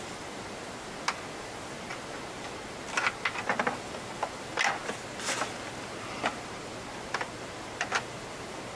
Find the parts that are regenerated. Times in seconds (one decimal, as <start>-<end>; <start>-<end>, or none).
none